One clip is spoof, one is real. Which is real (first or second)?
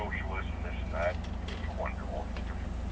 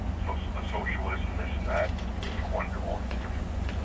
first